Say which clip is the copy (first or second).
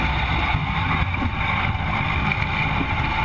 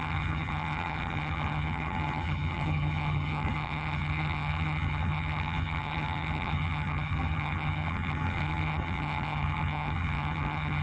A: second